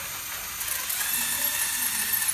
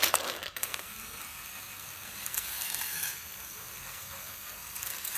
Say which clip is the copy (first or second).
second